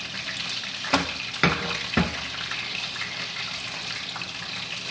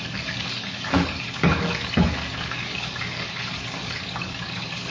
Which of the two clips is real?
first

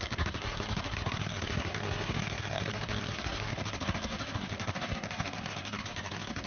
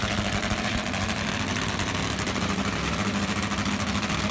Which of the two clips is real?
second